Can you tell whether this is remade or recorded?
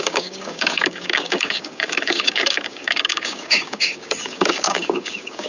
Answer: remade